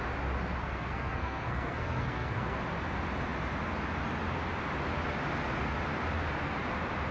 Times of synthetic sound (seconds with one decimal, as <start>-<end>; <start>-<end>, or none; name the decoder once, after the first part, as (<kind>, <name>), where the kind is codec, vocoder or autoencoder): 0.6-2.6 (codec, SNAC)